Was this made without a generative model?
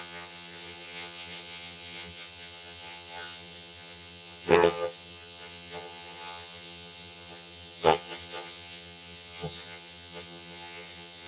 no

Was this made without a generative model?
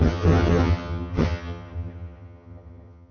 no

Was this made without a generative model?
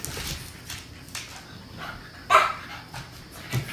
yes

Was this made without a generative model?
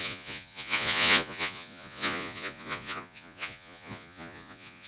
no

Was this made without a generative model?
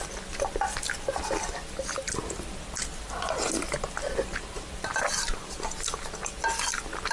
yes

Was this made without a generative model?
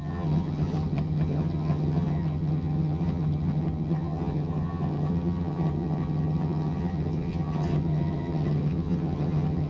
no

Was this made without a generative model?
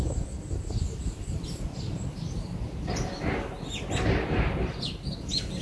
yes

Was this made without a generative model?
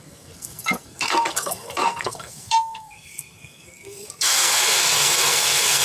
no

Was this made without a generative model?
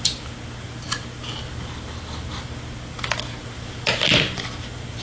yes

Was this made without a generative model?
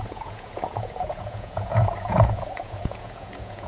no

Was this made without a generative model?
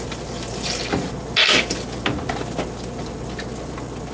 yes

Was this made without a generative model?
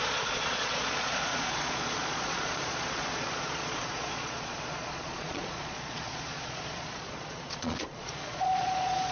no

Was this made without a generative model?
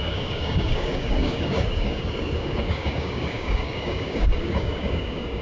no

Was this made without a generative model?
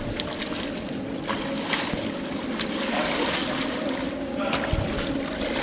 yes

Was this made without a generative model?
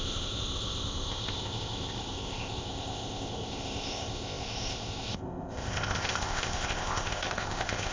no